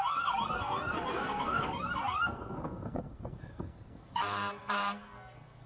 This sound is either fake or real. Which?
fake